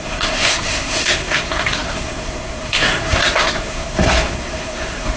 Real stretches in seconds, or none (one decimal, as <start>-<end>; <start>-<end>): none